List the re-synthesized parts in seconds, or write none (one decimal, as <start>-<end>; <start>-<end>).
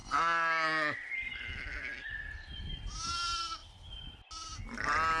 none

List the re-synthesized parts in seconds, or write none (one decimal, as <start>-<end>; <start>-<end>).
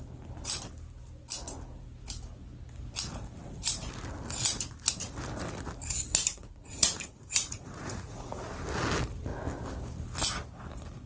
6.3-8.4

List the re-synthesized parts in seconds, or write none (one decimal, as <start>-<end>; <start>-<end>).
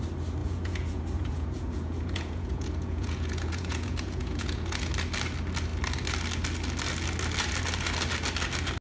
0.4-4.9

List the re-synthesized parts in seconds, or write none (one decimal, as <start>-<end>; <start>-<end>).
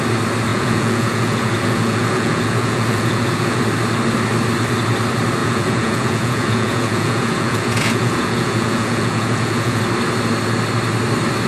0.5-3.6; 5.4-9.8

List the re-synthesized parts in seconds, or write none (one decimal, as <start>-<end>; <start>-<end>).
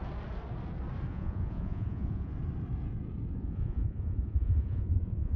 1.1-2.3; 3.3-5.4